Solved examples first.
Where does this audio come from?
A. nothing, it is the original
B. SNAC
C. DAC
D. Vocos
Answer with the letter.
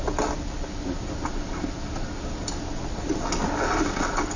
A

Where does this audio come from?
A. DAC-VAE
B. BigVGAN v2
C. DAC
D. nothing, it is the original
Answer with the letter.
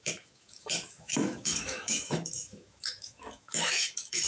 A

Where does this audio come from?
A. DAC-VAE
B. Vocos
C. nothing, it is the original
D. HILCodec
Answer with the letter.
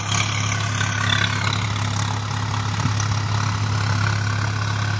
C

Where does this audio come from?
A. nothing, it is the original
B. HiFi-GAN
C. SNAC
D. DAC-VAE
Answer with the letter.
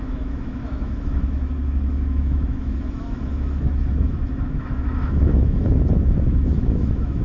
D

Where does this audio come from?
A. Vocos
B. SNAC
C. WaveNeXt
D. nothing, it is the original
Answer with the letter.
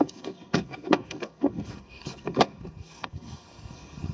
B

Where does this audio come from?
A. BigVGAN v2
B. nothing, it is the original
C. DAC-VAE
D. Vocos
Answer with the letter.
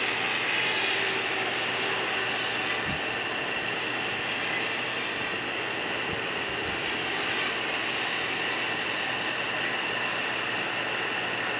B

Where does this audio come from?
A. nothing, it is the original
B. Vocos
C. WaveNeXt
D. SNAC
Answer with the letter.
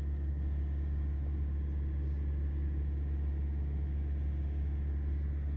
A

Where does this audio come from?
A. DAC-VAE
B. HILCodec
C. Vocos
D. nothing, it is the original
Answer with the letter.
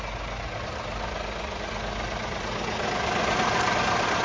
D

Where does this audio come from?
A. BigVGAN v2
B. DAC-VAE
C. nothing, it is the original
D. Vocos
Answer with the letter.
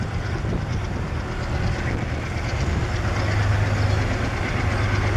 C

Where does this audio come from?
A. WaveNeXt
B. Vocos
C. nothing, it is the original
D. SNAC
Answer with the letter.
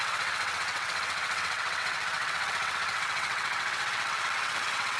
A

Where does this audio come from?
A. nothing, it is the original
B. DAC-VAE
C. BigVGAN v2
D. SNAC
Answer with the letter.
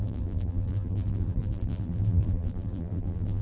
C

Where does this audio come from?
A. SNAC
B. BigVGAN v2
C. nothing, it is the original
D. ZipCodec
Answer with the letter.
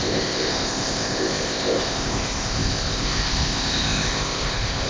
D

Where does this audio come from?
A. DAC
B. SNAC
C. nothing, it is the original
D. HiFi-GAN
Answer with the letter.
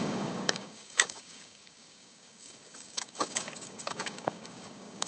A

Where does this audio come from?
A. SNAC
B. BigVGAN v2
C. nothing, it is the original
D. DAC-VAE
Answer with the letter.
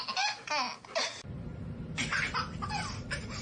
C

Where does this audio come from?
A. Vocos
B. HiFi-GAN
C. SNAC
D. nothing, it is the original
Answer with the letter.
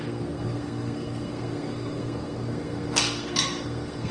C